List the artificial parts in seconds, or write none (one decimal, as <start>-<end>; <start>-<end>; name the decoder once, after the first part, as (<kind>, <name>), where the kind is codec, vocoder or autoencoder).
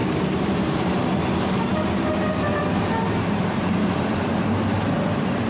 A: 0.0-0.9 (vocoder, BigVGAN v2)